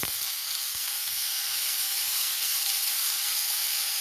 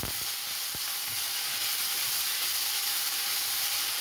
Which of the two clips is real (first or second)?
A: second